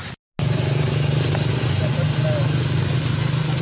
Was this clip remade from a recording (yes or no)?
no